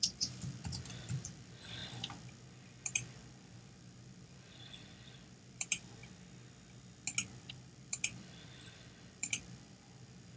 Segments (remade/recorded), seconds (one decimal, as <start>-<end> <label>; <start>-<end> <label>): 0.0-6.0 remade; 6.0-7.5 recorded; 7.5-10.4 remade